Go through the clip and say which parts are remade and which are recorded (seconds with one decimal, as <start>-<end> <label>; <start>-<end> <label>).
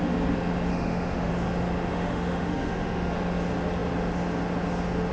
0.0-0.7 recorded; 0.7-1.3 remade; 1.3-1.9 recorded; 1.9-3.1 remade; 3.1-5.1 recorded